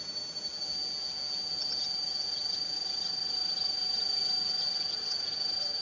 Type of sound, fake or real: real